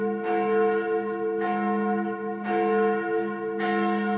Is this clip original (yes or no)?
yes